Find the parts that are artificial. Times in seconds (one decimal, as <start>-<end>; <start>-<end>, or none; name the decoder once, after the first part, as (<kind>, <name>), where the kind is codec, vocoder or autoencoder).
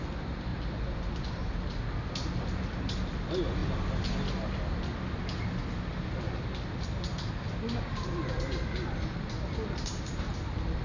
none